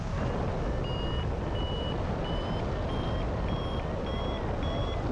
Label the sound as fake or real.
real